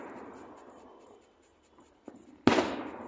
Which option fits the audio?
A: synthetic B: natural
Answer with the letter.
B